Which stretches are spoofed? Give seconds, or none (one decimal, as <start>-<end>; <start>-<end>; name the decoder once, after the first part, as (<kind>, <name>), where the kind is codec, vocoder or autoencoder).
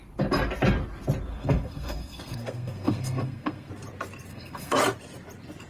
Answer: 1.3-3.7 (codec, SNAC); 4.3-4.8